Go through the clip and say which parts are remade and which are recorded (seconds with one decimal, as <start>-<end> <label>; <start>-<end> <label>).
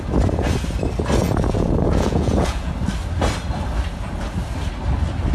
0.0-1.2 recorded; 1.2-2.7 remade; 2.7-5.3 recorded